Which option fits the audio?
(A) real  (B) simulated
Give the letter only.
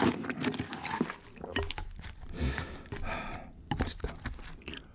A